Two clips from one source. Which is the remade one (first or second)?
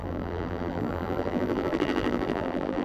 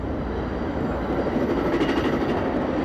first